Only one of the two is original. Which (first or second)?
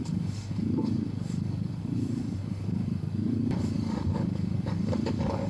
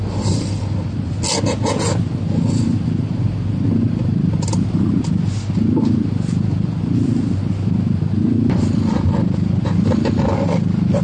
second